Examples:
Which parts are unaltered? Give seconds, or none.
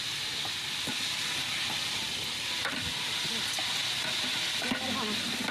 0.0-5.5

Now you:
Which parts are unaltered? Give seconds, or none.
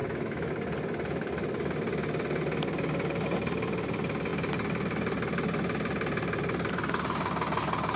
0.5-8.0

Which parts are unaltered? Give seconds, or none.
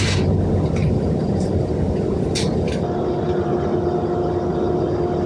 0.0-5.3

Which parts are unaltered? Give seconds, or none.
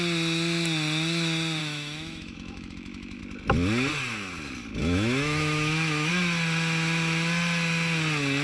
0.0-1.6; 3.2-4.8; 6.1-8.4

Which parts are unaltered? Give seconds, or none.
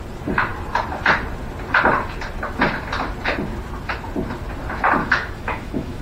0.0-5.0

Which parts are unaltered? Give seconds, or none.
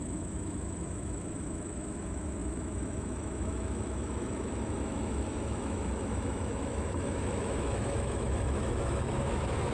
none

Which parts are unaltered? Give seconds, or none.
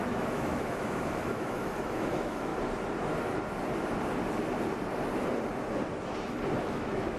2.5-6.6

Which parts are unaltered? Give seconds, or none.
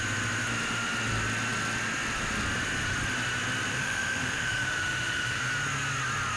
0.0-3.7; 5.4-6.4